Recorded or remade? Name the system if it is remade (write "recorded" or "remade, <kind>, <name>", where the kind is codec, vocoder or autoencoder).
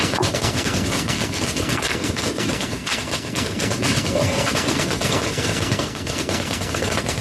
remade, codec, SNAC